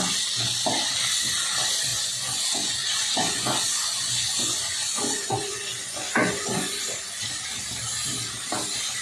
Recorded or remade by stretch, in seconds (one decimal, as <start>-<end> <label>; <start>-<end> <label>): 0.0-1.9 recorded; 1.9-6.8 remade; 6.8-9.0 recorded